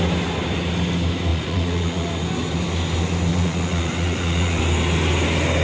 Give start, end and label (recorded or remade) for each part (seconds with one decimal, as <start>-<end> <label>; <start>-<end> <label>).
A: 0.0-1.3 recorded; 1.3-2.1 remade; 2.1-3.3 recorded; 3.3-4.6 remade; 4.6-5.6 recorded